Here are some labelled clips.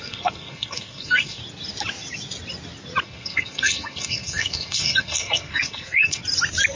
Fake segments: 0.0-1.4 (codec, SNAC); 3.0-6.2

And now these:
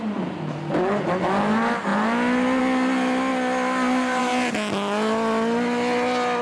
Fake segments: none

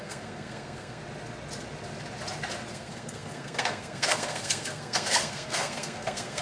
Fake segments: 0.0-1.0 (codec, SNAC); 2.7-6.4